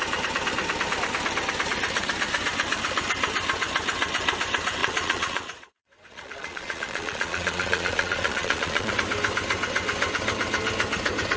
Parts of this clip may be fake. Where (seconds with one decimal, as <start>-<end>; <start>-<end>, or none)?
4.8-8.9